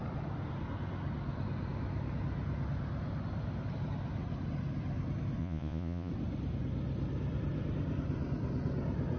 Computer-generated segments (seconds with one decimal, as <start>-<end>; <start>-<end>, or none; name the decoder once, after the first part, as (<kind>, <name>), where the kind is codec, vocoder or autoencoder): 5.4-6.1 (vocoder, Vocos)